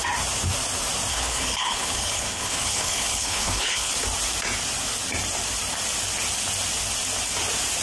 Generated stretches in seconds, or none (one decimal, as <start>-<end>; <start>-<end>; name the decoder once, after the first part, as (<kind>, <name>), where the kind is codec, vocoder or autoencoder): 1.1-3.9 (codec, HILCodec)